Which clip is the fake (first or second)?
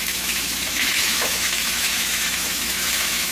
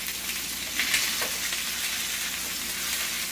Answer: first